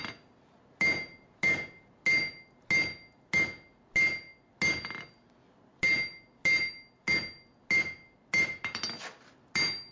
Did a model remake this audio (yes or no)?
no